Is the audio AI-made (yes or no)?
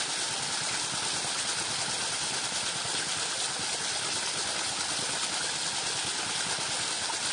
no